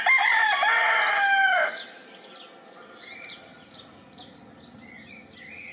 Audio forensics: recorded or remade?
recorded